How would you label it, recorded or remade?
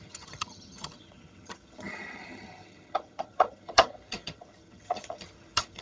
remade